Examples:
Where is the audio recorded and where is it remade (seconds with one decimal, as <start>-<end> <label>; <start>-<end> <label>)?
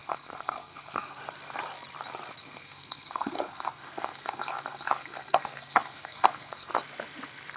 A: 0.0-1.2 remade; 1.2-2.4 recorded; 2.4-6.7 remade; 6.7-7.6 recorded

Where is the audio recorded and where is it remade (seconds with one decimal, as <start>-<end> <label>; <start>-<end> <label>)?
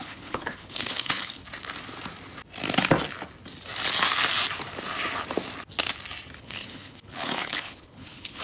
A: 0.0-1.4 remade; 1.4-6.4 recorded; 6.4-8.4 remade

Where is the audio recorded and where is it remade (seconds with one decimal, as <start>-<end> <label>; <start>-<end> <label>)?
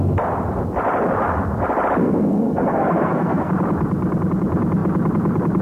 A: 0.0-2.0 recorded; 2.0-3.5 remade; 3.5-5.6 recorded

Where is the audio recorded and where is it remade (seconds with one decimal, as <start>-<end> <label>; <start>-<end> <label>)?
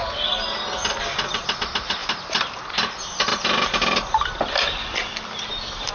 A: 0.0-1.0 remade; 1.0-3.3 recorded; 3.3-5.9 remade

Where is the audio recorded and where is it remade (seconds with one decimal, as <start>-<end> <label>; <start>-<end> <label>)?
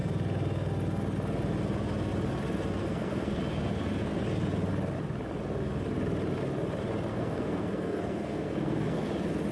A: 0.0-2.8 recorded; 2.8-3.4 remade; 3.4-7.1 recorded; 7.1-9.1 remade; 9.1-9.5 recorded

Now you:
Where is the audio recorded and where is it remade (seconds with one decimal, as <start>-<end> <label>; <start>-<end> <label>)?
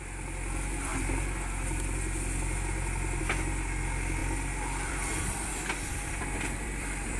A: 0.0-0.9 remade; 0.9-3.2 recorded; 3.2-7.2 remade